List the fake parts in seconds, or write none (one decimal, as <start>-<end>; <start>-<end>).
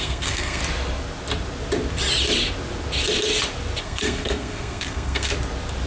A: 0.0-0.6; 3.8-5.3